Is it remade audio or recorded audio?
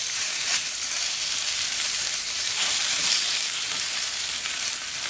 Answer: remade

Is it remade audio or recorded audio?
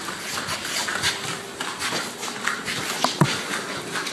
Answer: recorded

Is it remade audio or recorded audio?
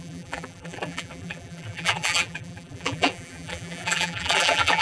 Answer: remade